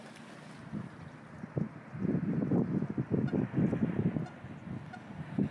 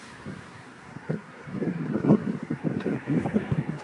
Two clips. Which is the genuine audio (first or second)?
first